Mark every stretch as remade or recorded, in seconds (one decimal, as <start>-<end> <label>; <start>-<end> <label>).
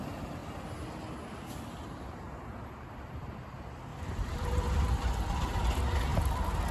0.0-3.9 recorded; 3.9-4.7 remade; 4.7-6.7 recorded